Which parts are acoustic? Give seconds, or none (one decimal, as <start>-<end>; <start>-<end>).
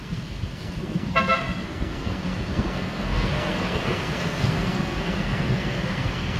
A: none